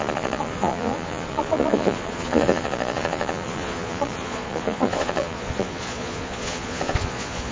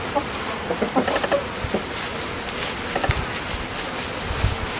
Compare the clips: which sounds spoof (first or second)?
first